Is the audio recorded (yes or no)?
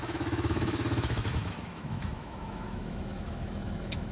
no